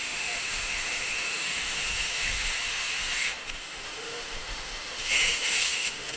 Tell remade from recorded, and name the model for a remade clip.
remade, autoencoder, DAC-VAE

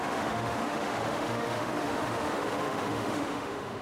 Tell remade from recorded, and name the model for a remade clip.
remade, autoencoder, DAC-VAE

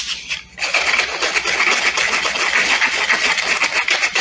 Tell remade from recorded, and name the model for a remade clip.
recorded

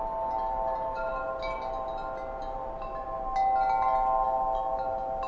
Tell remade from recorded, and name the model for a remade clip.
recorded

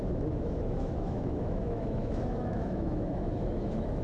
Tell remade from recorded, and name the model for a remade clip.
remade, autoencoder, DAC-VAE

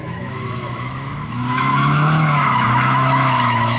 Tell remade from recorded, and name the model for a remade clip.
remade, autoencoder, DAC-VAE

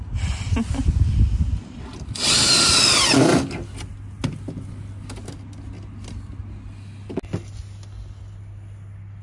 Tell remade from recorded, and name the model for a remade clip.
recorded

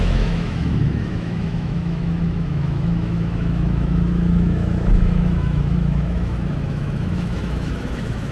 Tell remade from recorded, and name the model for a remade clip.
remade, autoencoder, DAC-VAE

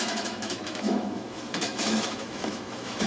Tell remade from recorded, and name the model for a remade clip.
remade, autoencoder, DAC-VAE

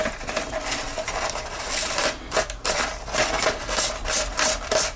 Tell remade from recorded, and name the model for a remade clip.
recorded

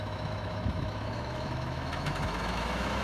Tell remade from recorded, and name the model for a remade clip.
remade, autoencoder, DAC-VAE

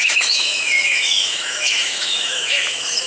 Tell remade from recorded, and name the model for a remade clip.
remade, autoencoder, DAC-VAE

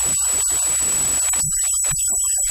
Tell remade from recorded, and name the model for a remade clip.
recorded